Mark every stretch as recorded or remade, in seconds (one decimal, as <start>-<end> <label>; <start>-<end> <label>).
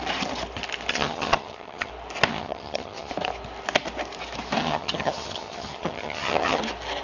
0.0-0.9 recorded; 0.9-1.9 remade; 1.9-2.3 recorded; 2.3-3.1 remade; 3.1-4.6 recorded; 4.6-6.6 remade; 6.6-7.0 recorded